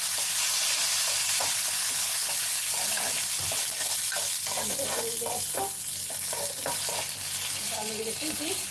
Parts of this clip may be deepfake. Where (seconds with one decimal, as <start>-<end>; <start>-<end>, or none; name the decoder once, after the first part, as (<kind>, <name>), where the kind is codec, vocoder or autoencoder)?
none